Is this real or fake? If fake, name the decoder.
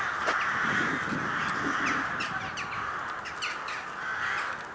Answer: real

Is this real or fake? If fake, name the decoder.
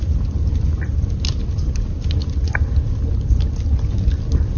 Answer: real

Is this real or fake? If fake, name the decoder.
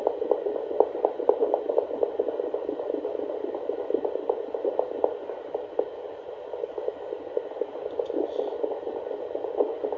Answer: real